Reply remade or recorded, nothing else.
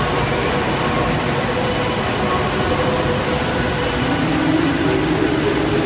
recorded